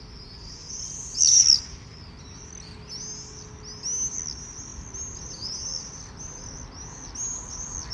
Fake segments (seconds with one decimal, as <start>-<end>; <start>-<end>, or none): 0.6-2.5